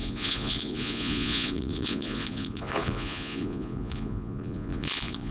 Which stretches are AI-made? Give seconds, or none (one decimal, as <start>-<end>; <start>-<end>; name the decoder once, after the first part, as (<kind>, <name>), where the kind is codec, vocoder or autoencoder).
0.0-5.3 (vocoder, Vocos)